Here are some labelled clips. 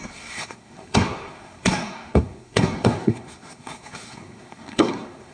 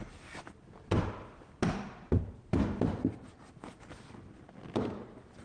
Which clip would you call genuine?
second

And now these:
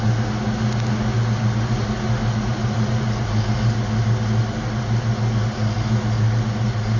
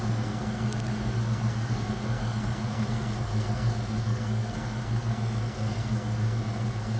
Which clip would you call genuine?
first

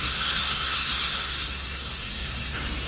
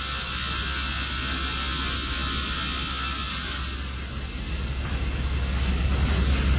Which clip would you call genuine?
second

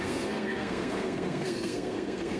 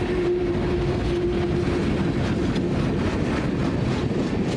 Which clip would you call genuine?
second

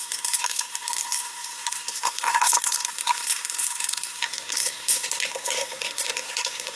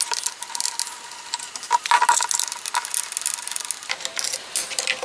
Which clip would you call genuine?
second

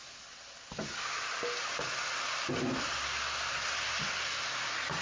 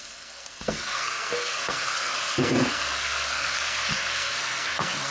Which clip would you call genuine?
first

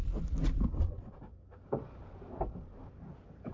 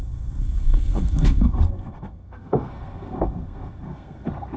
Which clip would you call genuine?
first